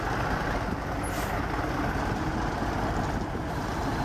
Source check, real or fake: real